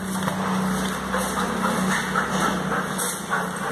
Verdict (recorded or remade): recorded